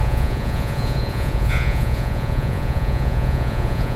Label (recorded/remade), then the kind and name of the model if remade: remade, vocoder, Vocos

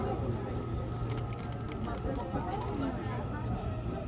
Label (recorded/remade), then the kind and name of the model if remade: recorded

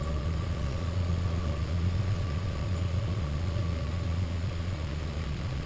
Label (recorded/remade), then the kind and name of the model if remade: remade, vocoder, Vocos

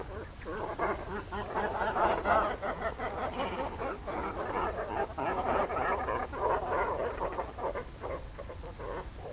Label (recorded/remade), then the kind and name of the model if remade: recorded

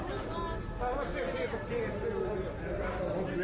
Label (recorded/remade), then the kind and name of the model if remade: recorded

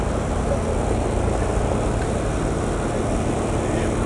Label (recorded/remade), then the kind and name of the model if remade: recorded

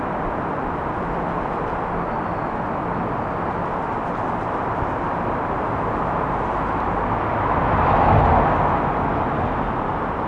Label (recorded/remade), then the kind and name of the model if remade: recorded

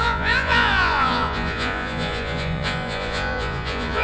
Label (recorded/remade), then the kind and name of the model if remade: remade, vocoder, Vocos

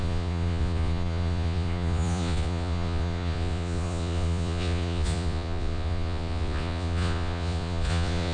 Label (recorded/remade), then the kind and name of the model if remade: remade, vocoder, Vocos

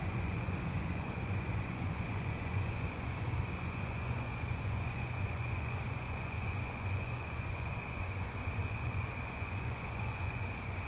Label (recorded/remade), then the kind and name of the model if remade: remade, vocoder, Vocos